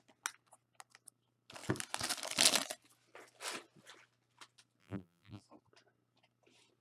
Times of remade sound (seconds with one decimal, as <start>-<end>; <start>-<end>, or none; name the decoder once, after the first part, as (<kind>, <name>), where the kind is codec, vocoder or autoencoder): 4.8-5.4 (vocoder, BigVGAN v2)